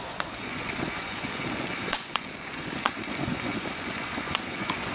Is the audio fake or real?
fake